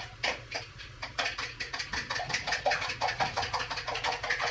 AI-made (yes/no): yes